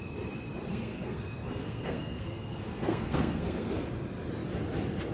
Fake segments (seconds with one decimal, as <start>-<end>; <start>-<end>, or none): 0.7-3.8